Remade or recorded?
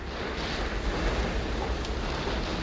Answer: recorded